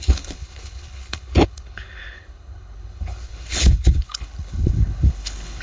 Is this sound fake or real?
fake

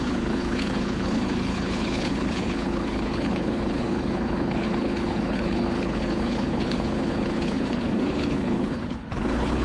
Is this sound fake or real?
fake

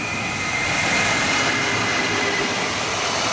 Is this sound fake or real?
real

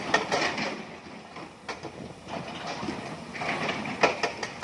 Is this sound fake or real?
real